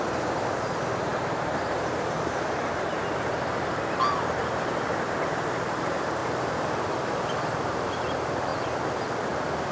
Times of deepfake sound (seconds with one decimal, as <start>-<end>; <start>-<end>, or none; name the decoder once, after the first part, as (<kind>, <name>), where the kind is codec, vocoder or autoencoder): 0.0-3.5 (vocoder, BigVGAN v2); 4.4-6.2; 6.9-8.5